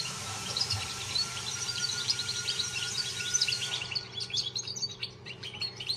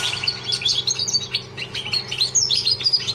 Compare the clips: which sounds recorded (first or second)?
second